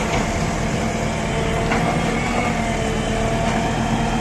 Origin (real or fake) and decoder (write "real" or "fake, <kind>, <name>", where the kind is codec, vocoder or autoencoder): real